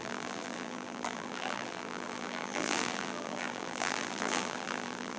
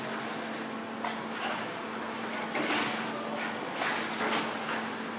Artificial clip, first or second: first